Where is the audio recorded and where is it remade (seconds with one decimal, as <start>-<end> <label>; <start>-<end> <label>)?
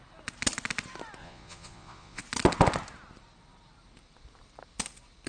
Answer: 0.0-1.2 recorded; 1.2-2.2 remade; 2.2-5.3 recorded